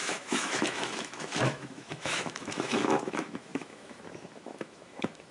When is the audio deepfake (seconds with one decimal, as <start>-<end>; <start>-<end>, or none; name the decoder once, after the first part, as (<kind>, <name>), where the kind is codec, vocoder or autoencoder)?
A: 0.0-5.3 (autoencoder, DAC-VAE)